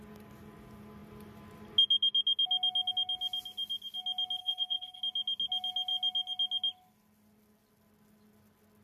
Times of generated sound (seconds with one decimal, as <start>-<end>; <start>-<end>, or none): 4.4-5.0